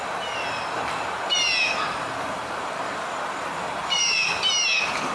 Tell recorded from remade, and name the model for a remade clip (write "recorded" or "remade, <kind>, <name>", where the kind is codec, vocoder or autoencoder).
recorded